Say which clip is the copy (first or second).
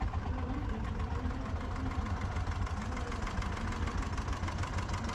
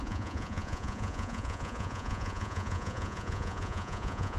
second